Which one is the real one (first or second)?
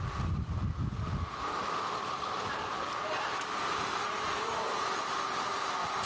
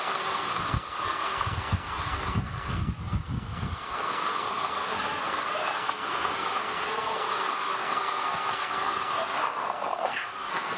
first